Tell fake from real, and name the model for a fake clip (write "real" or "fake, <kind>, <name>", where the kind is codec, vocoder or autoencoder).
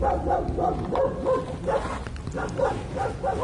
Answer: fake, vocoder, BigVGAN v2